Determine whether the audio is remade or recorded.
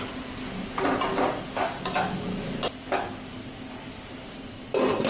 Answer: recorded